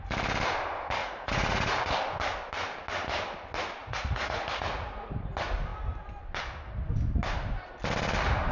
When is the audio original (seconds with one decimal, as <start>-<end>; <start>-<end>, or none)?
0.0-1.0; 1.9-3.8; 5.1-8.5